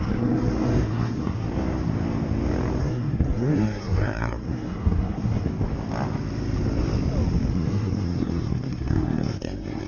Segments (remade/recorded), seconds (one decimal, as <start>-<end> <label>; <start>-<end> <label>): 0.0-1.5 remade; 1.5-2.8 recorded; 2.8-5.5 remade; 5.5-7.5 recorded; 7.5-9.9 remade

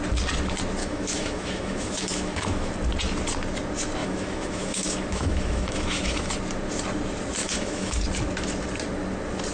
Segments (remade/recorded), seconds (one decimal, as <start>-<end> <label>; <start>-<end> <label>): 0.0-0.8 recorded; 0.8-2.7 remade; 2.7-4.0 recorded; 4.0-6.3 remade; 6.3-7.4 recorded; 7.4-8.0 remade; 8.0-9.5 recorded

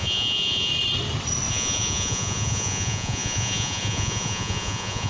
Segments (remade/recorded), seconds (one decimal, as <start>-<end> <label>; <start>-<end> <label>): 0.0-0.7 remade; 0.7-1.5 recorded; 1.5-5.1 remade

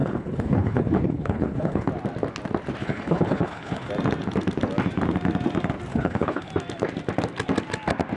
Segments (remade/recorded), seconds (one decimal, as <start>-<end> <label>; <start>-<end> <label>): 0.0-1.9 remade; 1.9-2.8 recorded; 2.8-3.9 remade; 3.9-5.9 recorded; 5.9-6.5 remade; 6.5-8.2 recorded

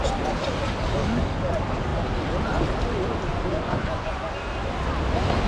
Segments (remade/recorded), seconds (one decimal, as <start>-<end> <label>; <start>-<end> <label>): 0.0-3.3 recorded; 3.3-4.2 remade; 4.2-5.5 recorded

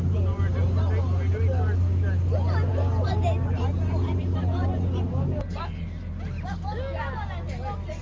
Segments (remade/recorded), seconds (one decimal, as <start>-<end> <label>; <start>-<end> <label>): 0.0-8.0 recorded